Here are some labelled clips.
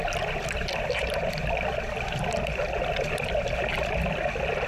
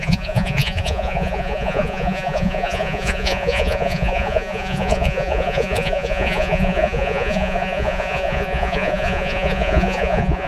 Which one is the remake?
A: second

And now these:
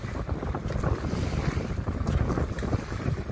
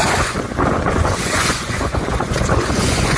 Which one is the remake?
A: second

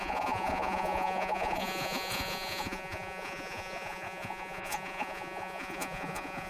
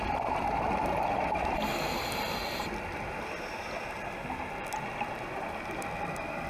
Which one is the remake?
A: first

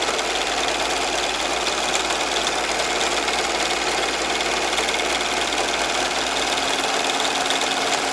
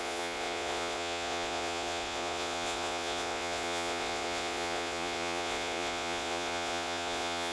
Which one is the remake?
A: second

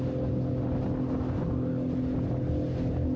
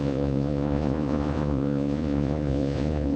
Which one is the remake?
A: second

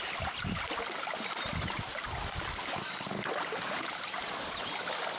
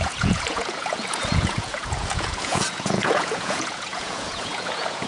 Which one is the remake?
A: second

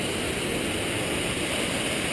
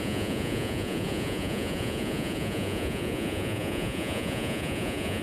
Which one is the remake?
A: second